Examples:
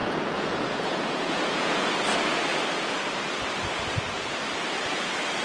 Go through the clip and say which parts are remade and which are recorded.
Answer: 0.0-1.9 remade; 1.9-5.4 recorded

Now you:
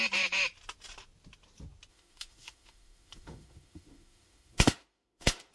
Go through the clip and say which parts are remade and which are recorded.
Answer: 0.0-1.9 recorded; 1.9-5.5 remade